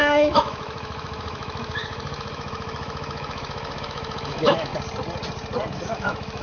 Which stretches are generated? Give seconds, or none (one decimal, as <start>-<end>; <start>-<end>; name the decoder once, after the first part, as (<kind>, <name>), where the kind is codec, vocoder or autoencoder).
0.0-4.7 (autoencoder, DAC-VAE); 5.7-6.4